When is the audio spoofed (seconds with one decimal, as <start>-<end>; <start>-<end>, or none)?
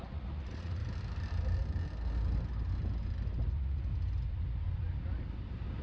0.0-0.8; 3.5-3.9